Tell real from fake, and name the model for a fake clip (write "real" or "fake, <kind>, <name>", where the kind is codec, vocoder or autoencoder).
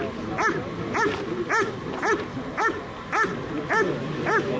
real